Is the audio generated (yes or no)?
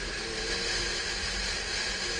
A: no